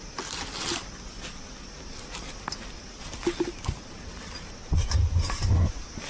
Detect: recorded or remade recorded